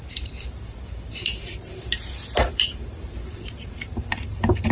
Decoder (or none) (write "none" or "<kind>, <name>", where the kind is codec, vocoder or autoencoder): vocoder, BigVGAN v2